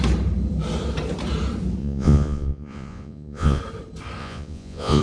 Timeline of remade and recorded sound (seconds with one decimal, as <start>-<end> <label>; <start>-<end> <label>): 0.0-1.8 recorded; 1.8-3.6 remade; 3.6-4.2 recorded; 4.2-5.0 remade